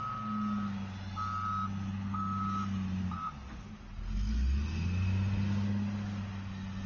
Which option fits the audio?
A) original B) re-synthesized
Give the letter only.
A